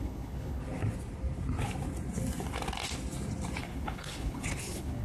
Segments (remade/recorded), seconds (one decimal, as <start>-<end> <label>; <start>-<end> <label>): 0.0-0.6 remade; 0.6-3.6 recorded; 3.6-5.0 remade